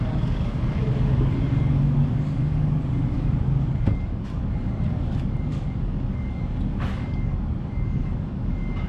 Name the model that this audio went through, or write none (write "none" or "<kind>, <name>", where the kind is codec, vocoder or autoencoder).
codec, DAC